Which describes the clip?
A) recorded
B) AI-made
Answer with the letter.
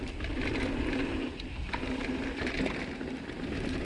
A